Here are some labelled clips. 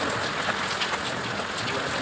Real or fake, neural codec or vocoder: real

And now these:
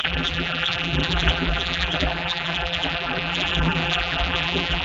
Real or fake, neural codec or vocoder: fake, vocoder, BigVGAN v2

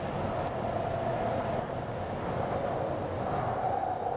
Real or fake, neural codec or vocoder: real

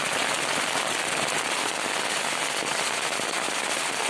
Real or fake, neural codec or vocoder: real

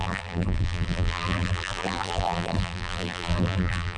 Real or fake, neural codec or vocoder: fake, vocoder, BigVGAN v2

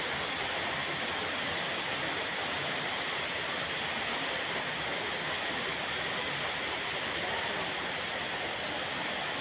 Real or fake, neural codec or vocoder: real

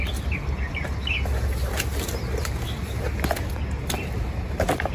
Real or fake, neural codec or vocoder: real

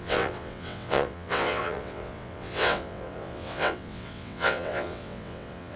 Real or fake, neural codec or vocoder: fake, vocoder, WaveNeXt